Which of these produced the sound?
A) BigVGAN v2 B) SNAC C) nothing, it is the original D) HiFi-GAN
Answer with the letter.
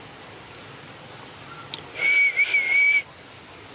C